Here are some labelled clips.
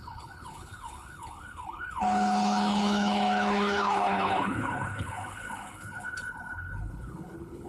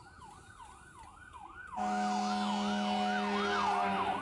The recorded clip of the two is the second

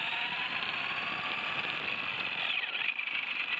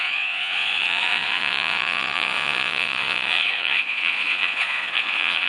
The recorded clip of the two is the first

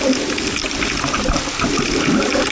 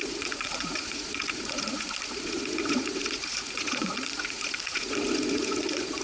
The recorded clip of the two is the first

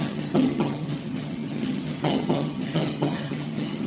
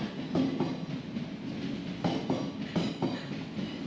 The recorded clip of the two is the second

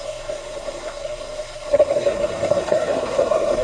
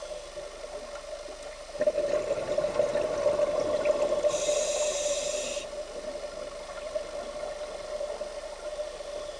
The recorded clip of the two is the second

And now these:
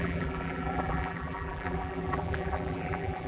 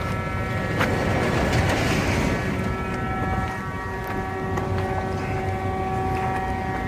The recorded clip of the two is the second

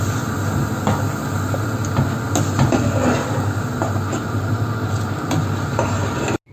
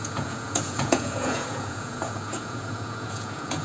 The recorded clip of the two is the first